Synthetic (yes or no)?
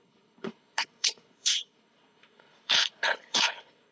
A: yes